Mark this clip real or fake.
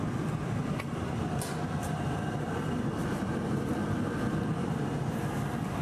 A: fake